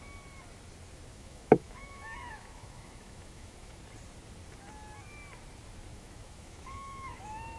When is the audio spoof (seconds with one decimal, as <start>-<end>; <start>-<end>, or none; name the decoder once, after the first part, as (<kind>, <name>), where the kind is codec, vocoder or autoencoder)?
1.1-3.8 (autoencoder, DAC-VAE); 5.9-7.6